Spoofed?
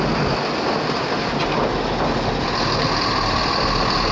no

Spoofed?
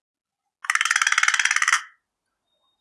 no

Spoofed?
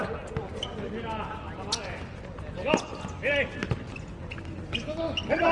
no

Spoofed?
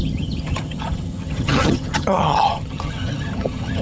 yes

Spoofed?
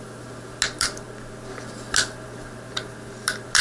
no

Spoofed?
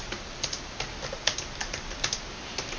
no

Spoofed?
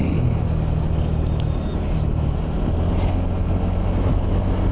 no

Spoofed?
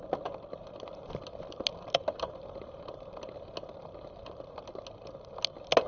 no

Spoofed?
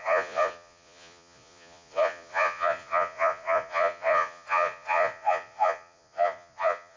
yes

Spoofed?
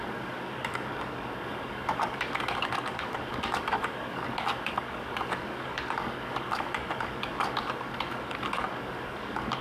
yes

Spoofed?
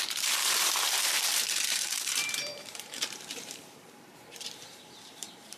yes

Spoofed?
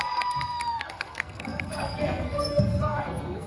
yes